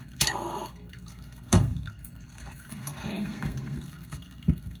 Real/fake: fake